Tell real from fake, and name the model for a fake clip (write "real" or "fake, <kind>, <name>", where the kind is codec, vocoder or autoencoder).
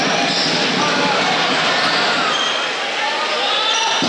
real